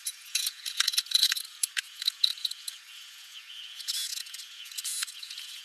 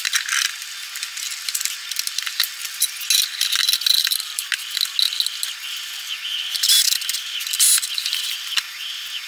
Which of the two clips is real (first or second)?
second